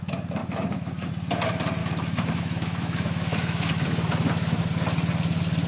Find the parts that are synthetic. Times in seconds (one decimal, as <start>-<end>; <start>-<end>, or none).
0.4-1.1; 1.8-4.6